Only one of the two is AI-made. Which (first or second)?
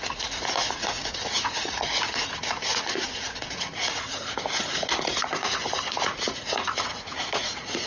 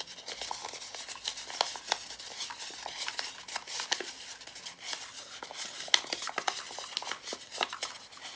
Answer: first